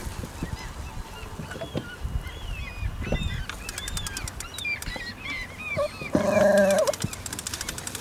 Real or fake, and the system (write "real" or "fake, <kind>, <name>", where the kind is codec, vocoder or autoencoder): real